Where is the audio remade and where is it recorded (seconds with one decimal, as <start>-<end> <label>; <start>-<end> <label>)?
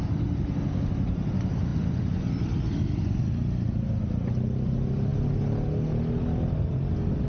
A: 0.0-7.3 recorded